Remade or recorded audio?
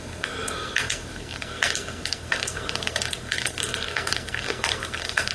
remade